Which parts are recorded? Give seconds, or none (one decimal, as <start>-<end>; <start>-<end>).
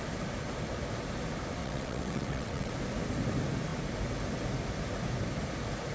0.0-1.6; 2.7-5.9